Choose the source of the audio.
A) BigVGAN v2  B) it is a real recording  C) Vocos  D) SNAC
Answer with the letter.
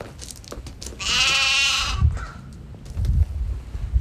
B